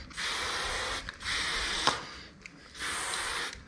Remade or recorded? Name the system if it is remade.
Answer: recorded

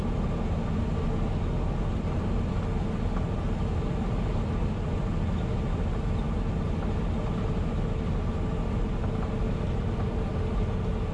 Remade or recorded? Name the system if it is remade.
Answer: recorded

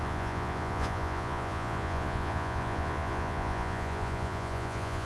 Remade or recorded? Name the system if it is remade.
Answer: remade, vocoder, Vocos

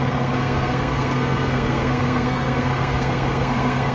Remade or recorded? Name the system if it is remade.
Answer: remade, codec, SNAC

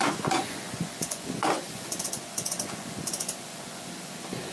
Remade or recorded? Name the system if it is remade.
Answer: remade, vocoder, Vocos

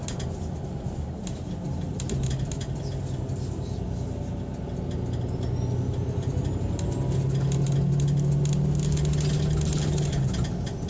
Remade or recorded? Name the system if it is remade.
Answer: recorded